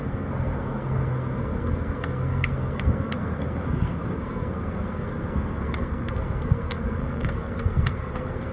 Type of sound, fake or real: fake